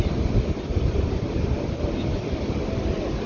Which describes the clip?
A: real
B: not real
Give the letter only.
A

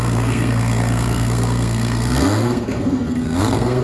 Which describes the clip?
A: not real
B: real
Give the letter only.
A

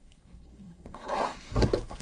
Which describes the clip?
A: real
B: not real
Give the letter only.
B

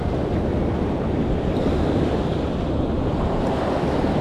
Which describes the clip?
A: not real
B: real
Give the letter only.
B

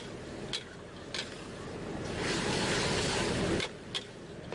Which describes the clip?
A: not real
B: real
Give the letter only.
B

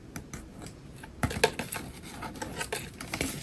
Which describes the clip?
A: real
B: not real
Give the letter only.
A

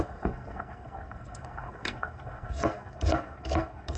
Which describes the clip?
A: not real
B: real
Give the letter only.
A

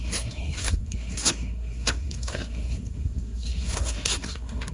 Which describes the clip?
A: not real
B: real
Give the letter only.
A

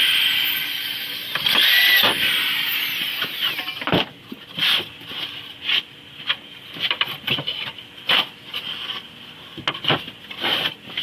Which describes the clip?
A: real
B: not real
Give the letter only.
A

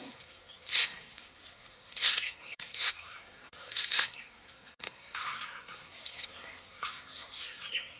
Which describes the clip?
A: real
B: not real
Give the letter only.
B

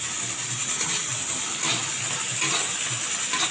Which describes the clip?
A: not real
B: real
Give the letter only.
B